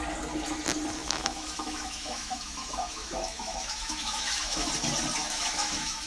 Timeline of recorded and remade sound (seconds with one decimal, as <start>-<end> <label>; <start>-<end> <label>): 0.0-1.0 recorded; 1.0-4.7 remade; 4.7-5.2 recorded; 5.2-6.1 remade